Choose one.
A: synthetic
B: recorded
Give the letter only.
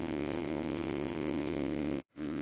A